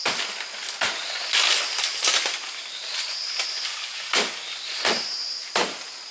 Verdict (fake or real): real